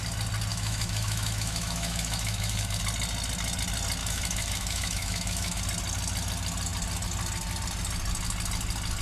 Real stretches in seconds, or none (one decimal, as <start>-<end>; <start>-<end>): 0.0-0.5; 2.8-4.0; 5.6-9.0